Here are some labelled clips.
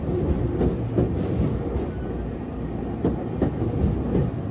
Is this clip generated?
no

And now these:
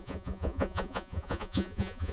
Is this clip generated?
yes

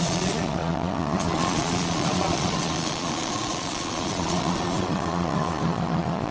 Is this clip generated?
yes